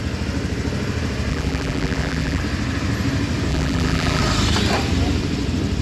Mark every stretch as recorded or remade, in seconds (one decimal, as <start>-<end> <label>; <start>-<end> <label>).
0.0-1.3 recorded; 1.3-2.4 remade; 2.4-3.5 recorded; 3.5-4.2 remade; 4.2-5.8 recorded